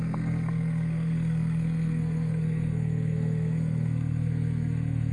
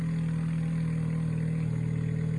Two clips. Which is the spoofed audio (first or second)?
first